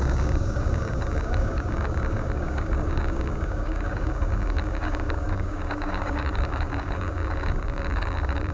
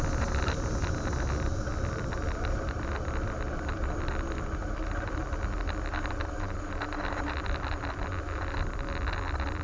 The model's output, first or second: first